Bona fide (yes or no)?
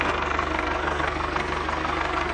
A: no